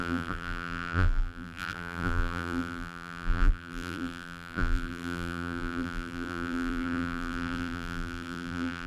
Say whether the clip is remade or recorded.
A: remade